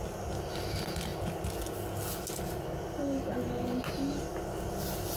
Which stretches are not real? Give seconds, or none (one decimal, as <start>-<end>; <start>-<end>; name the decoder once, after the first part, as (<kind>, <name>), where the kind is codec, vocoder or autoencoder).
none